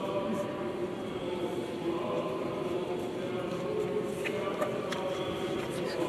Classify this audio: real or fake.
real